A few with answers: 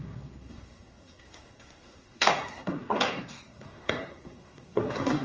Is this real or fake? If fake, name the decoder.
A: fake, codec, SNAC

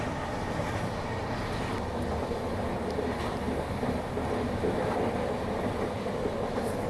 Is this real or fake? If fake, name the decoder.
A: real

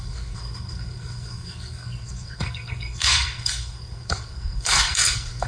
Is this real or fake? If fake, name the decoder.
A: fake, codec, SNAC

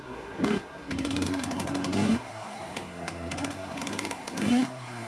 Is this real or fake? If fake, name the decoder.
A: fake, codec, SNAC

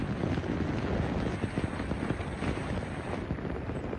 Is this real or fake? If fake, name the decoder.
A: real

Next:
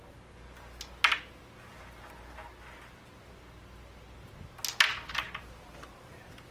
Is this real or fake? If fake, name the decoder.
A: real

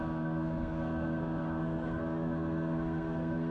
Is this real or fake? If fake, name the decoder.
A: fake, codec, SNAC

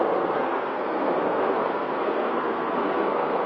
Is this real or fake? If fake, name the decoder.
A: fake, codec, SNAC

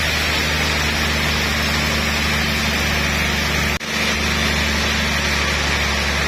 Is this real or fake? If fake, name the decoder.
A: real